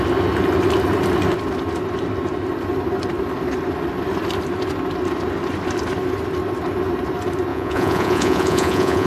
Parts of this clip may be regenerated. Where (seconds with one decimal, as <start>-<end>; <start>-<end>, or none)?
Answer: 7.5-9.1